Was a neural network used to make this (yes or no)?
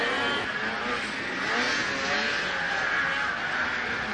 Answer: no